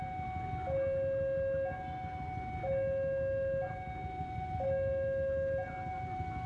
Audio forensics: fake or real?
real